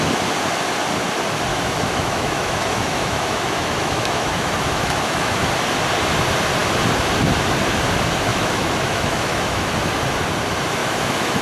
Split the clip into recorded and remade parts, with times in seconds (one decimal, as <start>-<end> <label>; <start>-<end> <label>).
0.0-1.5 recorded; 1.5-5.5 remade; 5.5-8.3 recorded; 8.3-9.7 remade; 9.7-10.8 recorded; 10.8-11.4 remade